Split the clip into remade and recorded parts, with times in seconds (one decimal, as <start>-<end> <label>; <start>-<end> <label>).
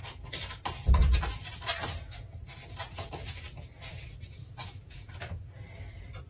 0.0-4.4 recorded; 4.4-5.4 remade; 5.4-6.3 recorded